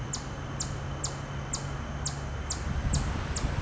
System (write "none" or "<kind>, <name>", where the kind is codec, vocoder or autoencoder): none